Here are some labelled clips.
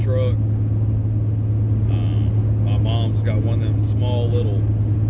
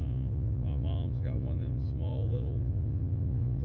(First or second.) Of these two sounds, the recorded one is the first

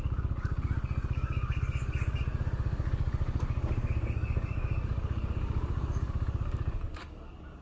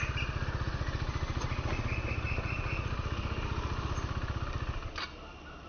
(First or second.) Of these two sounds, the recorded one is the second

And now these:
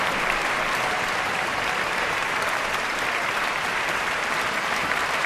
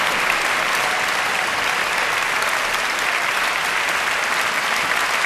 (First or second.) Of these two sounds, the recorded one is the second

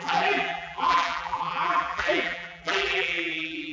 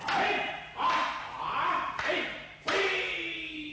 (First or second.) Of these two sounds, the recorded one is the second